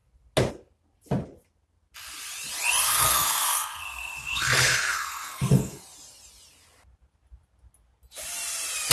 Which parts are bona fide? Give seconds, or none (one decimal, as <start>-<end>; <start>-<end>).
0.0-2.8; 5.8-8.9